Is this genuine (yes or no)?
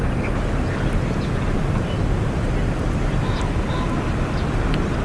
yes